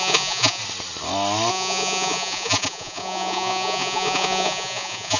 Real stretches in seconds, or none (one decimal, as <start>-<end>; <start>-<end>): 0.6-1.5